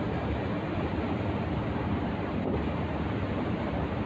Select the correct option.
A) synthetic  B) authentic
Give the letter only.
B